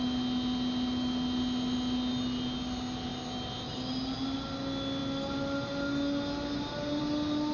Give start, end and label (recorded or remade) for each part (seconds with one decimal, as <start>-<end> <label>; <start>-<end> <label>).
0.0-7.5 recorded